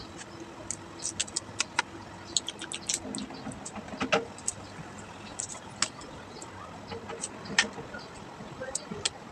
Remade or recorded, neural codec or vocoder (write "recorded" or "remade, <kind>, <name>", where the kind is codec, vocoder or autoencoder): recorded